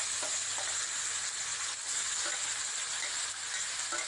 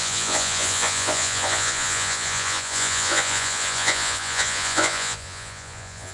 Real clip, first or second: first